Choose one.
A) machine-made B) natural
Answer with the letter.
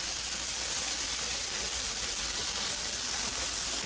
B